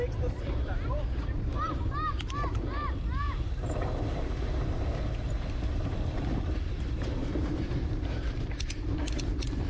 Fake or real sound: fake